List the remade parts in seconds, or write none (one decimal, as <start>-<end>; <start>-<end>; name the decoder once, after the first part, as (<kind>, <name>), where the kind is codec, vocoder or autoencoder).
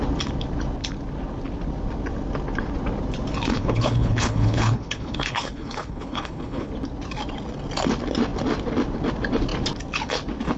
3.5-6.7 (codec, HILCodec)